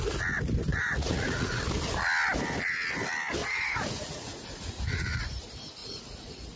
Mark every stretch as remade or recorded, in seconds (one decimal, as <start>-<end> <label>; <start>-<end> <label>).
0.0-0.7 recorded; 0.7-1.6 remade; 1.6-3.4 recorded; 3.4-5.3 remade; 5.3-5.8 recorded; 5.8-6.6 remade